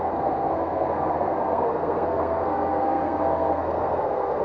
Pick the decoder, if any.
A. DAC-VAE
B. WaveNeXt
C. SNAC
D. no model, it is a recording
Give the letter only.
C